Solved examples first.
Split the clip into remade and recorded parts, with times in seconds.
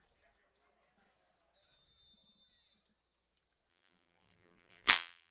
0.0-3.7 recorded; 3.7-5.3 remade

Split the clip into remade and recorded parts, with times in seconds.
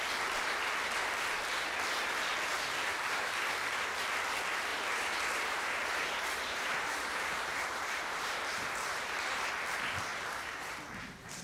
0.0-2.5 recorded; 2.5-3.3 remade; 3.3-4.7 recorded; 4.7-9.5 remade; 9.5-10.1 recorded; 10.1-10.8 remade; 10.8-11.4 recorded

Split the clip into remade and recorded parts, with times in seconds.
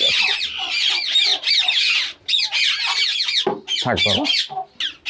0.0-5.1 recorded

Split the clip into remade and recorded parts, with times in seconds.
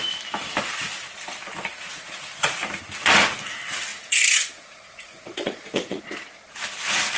0.0-1.7 recorded; 1.7-2.3 remade; 2.3-3.9 recorded; 3.9-6.0 remade; 6.0-7.2 recorded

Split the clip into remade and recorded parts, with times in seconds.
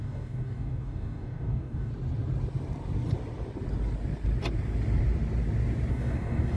0.0-1.9 remade; 1.9-5.9 recorded; 5.9-6.6 remade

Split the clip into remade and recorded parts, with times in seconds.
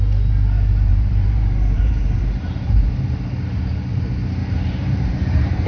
0.0-0.9 recorded; 0.9-2.9 remade; 2.9-4.4 recorded; 4.4-5.7 remade